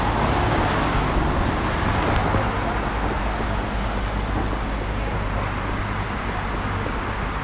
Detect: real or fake real